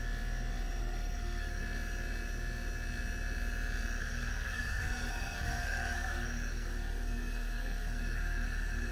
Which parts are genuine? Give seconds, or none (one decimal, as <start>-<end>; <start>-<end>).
0.0-0.8; 1.6-4.0